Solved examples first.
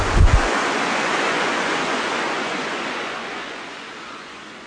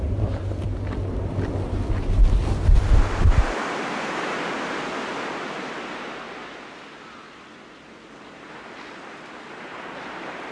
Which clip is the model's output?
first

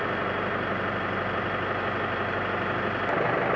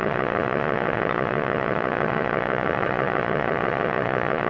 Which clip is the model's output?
second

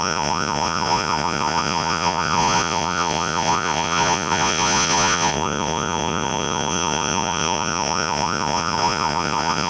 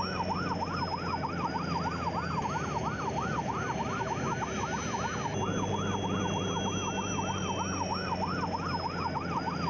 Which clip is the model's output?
first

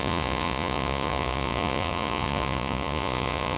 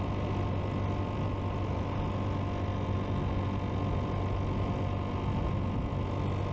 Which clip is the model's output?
first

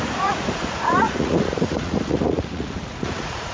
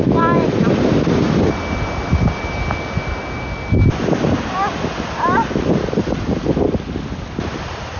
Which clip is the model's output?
first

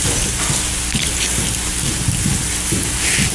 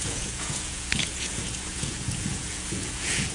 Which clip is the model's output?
second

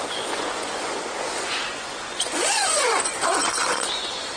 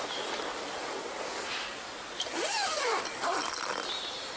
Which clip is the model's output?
first